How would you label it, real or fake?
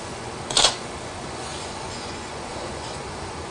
fake